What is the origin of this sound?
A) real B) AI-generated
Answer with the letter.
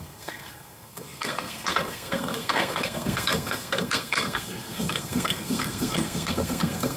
B